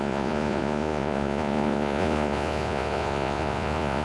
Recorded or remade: remade